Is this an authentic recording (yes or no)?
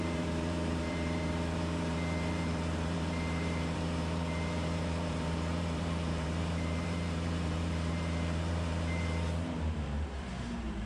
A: no